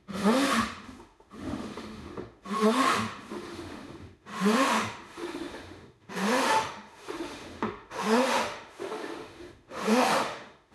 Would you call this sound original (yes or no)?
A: no